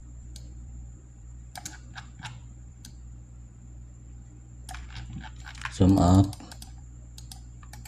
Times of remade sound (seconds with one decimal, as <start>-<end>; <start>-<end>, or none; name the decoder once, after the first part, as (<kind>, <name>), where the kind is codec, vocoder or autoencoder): 0.0-1.6 (vocoder, BigVGAN v2); 2.4-2.9; 6.3-7.9